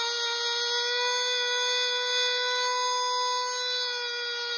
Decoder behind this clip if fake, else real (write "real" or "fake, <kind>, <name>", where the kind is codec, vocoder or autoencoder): real